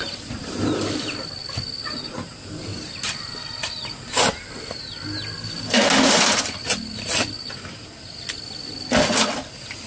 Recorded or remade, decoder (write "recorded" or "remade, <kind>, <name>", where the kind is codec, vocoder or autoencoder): recorded